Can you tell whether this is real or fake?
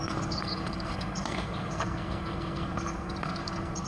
fake